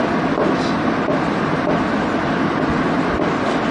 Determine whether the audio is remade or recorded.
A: recorded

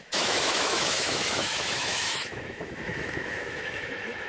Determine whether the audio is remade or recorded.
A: remade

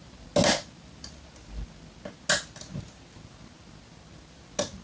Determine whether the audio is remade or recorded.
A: recorded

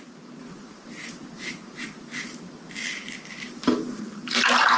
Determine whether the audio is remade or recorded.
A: recorded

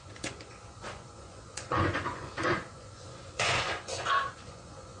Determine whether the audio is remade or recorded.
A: remade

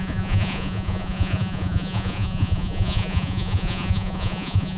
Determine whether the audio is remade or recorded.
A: remade